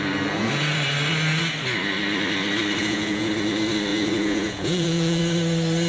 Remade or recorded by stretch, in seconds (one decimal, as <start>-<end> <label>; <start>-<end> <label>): 0.0-2.8 recorded; 2.8-3.3 remade; 3.3-3.9 recorded; 3.9-5.2 remade; 5.2-5.9 recorded